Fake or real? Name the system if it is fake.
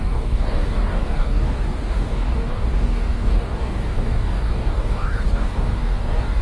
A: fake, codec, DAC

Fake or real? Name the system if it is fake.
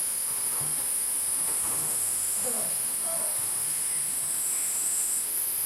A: fake, autoencoder, DAC-VAE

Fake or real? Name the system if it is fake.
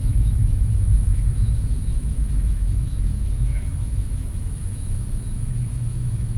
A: fake, autoencoder, DAC-VAE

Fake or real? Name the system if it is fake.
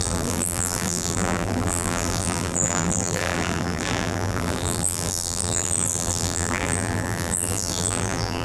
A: fake, vocoder, BigVGAN v2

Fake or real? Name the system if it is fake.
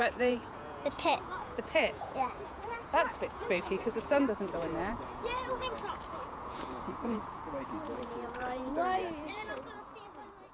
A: fake, vocoder, Vocos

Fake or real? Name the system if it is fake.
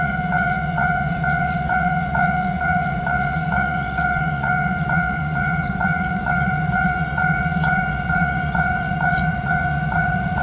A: fake, vocoder, Vocos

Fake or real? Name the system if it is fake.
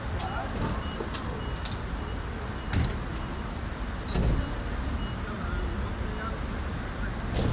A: real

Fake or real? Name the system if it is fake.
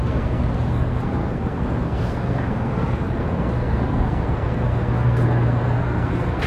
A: fake, codec, SNAC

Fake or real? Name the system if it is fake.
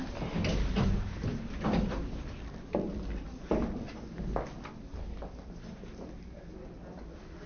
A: real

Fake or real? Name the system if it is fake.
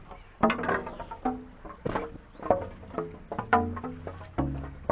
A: real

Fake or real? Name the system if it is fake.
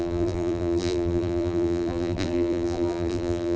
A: fake, vocoder, BigVGAN v2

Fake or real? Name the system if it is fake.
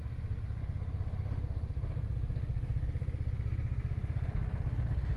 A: real